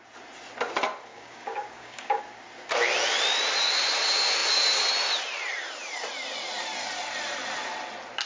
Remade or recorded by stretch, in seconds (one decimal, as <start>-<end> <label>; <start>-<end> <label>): 0.0-1.1 recorded; 1.1-2.2 remade; 2.2-8.3 recorded